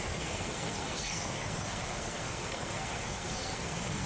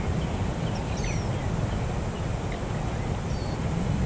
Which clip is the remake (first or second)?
first